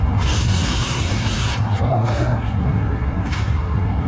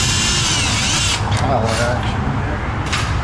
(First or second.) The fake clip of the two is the first